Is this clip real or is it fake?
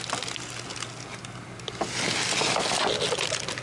real